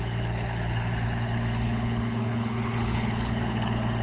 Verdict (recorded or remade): remade